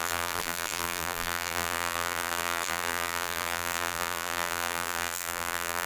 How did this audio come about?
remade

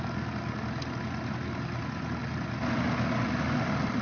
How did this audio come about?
recorded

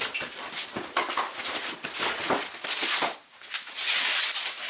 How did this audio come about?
recorded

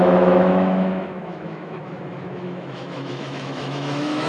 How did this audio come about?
remade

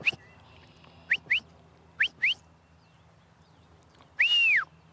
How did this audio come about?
recorded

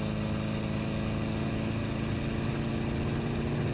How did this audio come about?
recorded